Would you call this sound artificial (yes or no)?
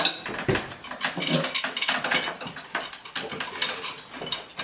no